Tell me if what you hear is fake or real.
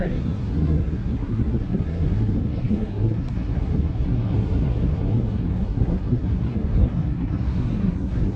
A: fake